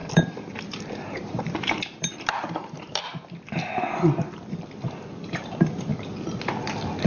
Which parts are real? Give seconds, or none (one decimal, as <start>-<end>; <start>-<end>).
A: 3.1-5.3; 5.9-7.1